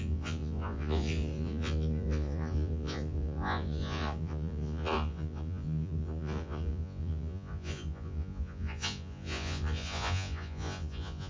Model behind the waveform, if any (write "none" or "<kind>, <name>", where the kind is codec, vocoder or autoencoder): vocoder, Vocos